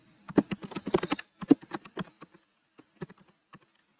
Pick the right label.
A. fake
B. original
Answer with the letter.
B